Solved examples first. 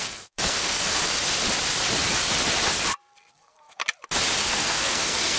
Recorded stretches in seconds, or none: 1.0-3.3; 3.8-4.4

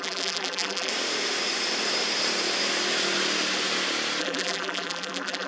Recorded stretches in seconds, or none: 0.9-4.2

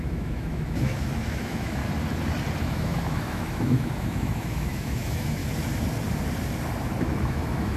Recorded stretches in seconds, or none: 1.8-2.6; 5.4-7.0